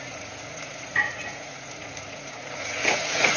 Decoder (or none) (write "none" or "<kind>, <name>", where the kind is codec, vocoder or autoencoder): vocoder, Vocos